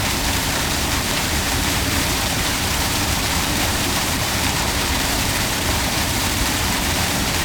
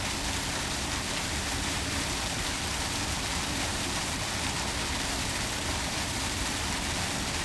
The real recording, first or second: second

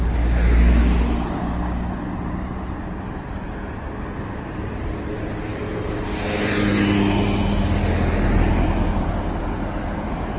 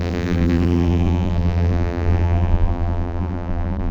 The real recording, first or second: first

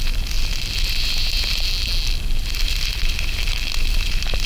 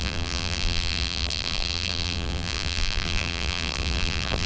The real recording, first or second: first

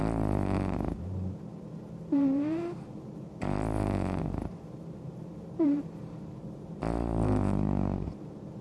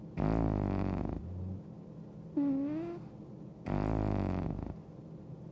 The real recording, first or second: second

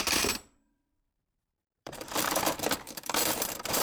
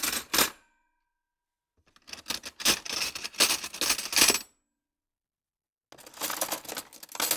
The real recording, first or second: second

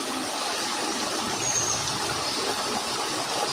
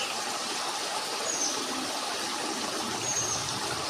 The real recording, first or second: first